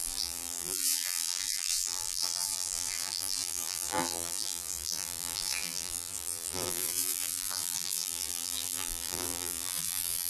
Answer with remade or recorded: remade